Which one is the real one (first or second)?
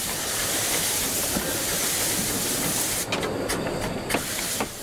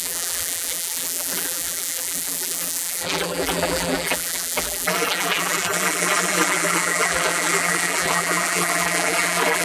first